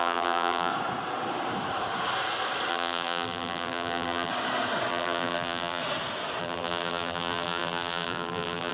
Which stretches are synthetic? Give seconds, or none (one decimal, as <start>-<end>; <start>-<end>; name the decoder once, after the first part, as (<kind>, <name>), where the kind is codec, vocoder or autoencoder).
0.0-0.7 (vocoder, BigVGAN v2); 2.7-4.3; 4.9-5.8; 6.4-8.7